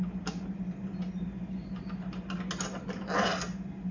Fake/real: real